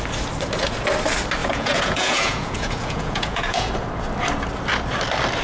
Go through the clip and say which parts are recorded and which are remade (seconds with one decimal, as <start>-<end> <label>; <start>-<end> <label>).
0.0-1.4 recorded; 1.4-3.7 remade; 3.7-5.4 recorded